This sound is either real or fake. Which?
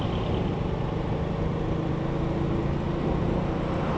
real